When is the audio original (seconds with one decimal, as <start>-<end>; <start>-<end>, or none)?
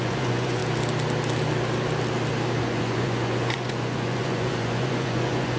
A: 0.6-2.6